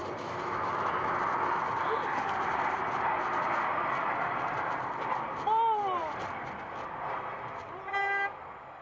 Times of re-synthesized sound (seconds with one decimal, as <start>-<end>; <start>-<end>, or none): 0.0-1.1

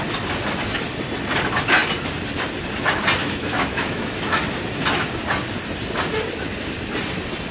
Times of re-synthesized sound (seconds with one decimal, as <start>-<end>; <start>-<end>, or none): 3.2-4.4